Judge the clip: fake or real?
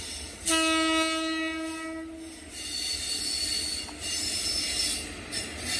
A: real